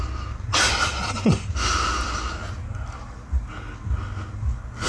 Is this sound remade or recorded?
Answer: recorded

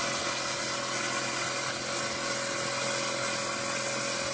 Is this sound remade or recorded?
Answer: recorded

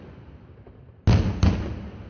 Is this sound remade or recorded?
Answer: recorded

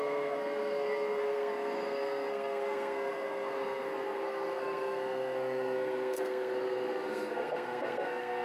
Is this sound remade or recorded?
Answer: remade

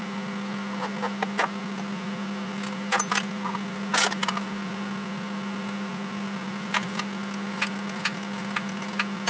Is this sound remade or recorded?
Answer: recorded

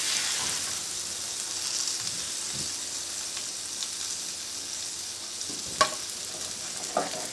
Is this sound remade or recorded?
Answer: recorded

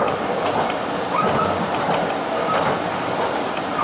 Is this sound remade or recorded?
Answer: recorded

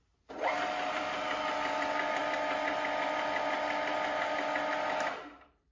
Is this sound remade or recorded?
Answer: recorded